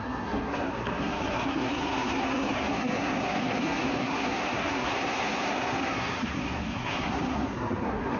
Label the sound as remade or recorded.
remade